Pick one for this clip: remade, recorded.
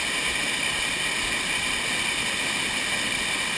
recorded